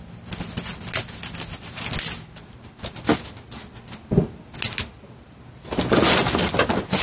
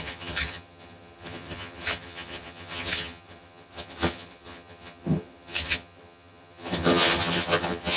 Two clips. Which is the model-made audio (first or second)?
second